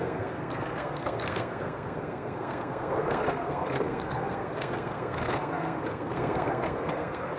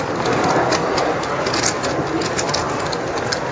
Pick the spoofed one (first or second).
first